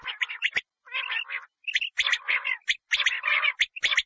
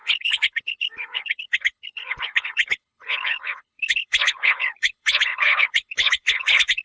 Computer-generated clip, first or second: second